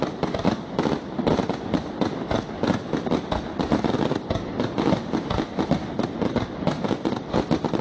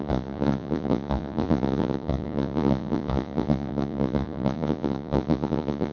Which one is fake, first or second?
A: second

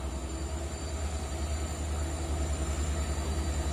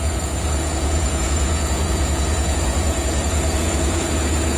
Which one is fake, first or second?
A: second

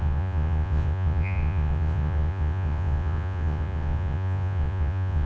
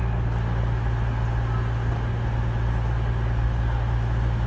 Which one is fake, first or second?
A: first